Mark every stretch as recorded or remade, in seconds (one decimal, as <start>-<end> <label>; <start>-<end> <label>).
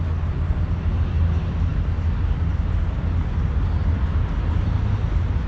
0.0-5.5 recorded